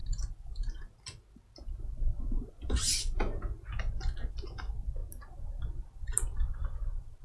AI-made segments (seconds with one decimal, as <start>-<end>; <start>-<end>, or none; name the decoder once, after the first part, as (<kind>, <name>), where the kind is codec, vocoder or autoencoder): none